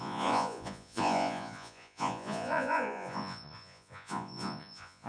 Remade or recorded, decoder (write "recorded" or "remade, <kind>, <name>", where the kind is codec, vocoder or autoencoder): remade, vocoder, Vocos